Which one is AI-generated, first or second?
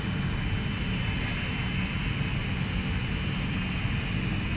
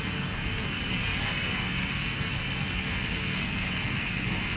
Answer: second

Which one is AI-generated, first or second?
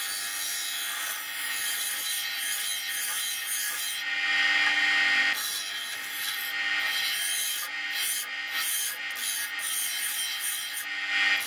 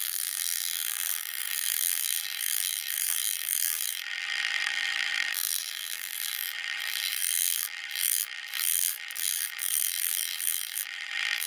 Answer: second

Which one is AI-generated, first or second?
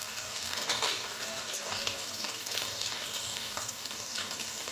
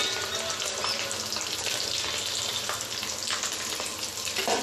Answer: first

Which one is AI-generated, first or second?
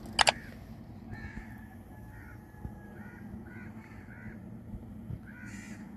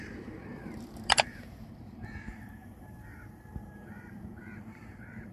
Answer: second